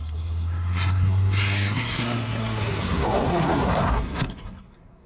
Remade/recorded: remade